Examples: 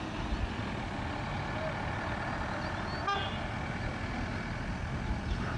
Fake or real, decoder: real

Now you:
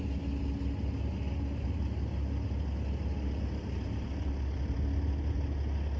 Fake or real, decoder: real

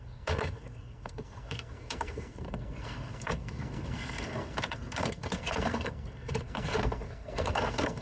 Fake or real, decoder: fake, codec, SNAC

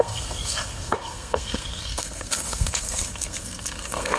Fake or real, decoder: fake, codec, SNAC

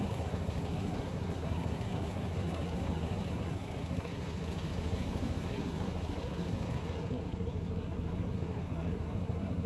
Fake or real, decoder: fake, codec, SNAC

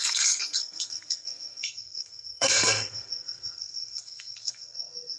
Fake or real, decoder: fake, codec, SNAC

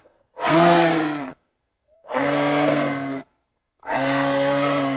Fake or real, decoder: fake, codec, SNAC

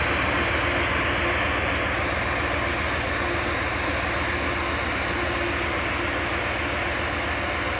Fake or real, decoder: real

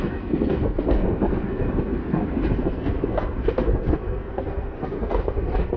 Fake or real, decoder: fake, codec, SNAC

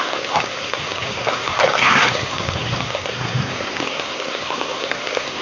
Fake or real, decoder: fake, codec, SNAC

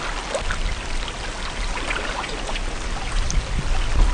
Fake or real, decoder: real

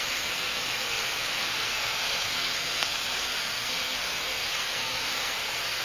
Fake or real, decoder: fake, codec, SNAC